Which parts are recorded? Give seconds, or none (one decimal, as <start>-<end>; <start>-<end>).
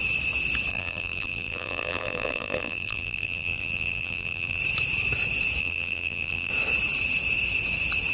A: 0.0-0.7; 4.6-5.6; 6.5-8.1